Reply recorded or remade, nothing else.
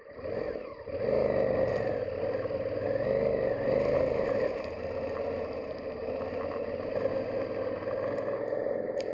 recorded